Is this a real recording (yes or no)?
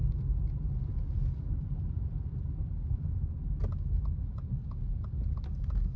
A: yes